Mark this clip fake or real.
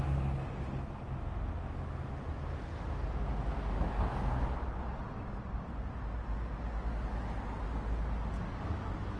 real